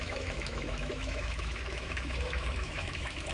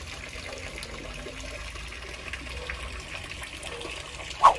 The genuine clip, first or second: second